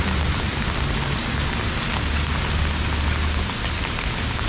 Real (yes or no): yes